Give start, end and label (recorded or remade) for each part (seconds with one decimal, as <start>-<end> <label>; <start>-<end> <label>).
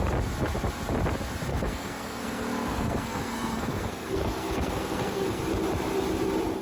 0.0-1.5 recorded; 1.5-5.4 remade; 5.4-6.6 recorded